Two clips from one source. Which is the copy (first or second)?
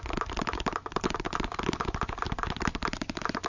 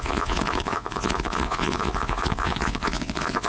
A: second